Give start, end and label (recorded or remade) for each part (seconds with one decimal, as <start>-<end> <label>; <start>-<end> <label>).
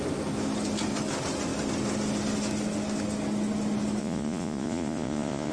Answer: 0.0-4.0 recorded; 4.0-5.5 remade